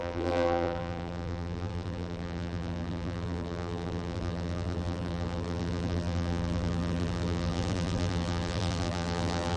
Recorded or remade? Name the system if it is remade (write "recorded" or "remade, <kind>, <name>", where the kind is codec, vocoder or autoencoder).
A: remade, vocoder, BigVGAN v2